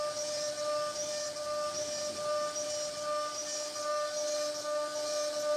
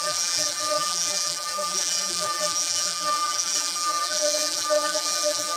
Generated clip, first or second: second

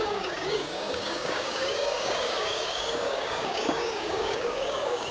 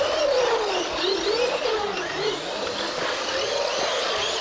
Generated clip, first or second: first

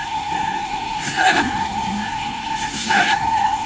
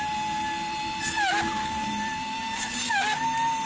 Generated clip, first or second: first